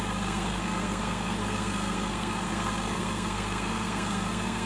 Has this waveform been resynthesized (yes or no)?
yes